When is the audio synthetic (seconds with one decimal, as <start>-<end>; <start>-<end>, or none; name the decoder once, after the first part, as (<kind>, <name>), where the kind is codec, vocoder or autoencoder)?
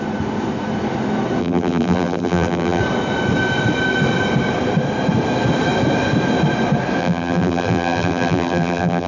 1.4-2.8 (vocoder, BigVGAN v2); 7.0-9.1